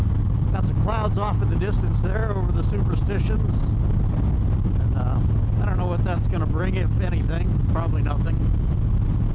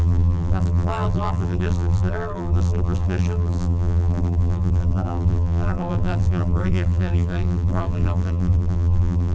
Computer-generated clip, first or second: second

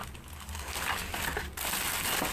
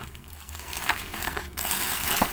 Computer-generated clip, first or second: second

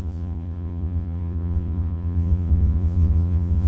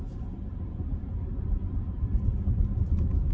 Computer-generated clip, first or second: first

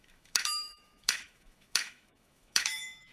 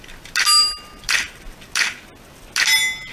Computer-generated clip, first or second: first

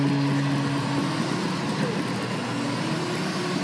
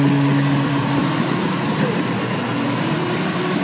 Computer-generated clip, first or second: second